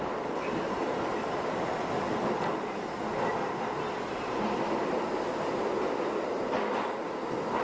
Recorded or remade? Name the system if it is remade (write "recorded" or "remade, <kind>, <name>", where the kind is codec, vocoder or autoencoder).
recorded